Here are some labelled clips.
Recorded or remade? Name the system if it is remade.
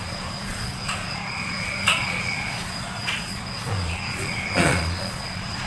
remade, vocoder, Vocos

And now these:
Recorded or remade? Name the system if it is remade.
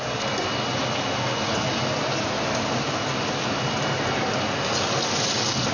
recorded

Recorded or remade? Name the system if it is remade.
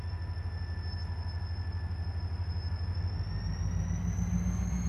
recorded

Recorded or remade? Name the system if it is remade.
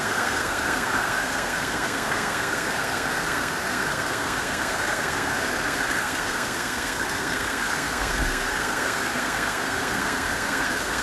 remade, codec, SNAC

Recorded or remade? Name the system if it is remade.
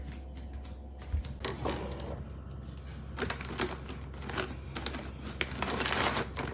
recorded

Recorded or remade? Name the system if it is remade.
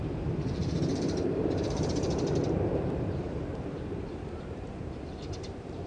remade, vocoder, BigVGAN v2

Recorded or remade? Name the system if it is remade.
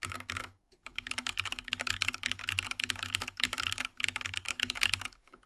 remade, codec, DAC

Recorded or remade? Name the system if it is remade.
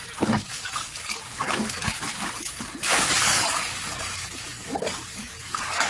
remade, codec, DAC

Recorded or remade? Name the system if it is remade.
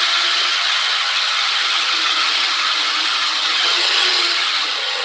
remade, vocoder, HiFi-GAN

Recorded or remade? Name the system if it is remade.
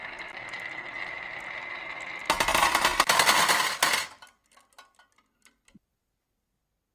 recorded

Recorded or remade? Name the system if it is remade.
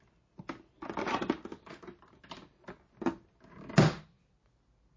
recorded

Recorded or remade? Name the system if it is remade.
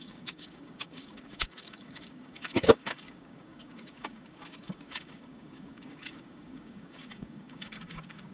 remade, codec, DAC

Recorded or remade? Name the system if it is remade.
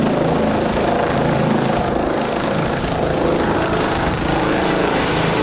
recorded